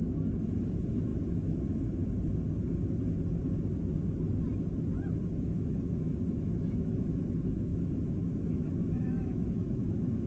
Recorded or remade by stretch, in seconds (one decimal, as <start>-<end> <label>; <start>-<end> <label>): 0.0-2.0 remade; 2.0-5.4 recorded; 5.4-10.3 remade